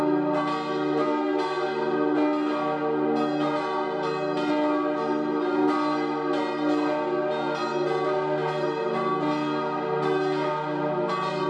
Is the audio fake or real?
real